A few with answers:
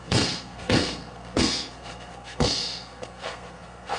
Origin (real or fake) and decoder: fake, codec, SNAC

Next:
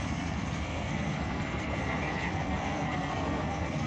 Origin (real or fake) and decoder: fake, codec, SNAC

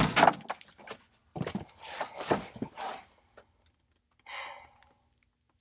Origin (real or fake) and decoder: real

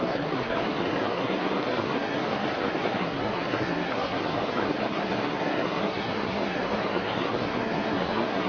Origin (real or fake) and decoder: fake, codec, SNAC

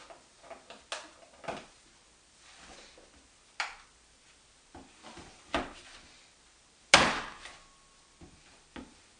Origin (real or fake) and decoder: real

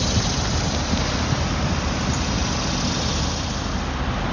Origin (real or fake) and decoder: real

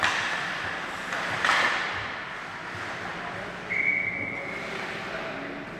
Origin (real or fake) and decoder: real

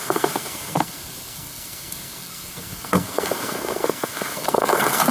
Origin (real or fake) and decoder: fake, codec, SNAC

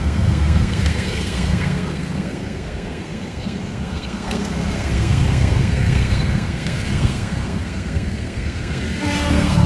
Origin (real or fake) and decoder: fake, codec, SNAC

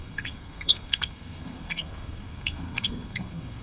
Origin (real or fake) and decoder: fake, codec, SNAC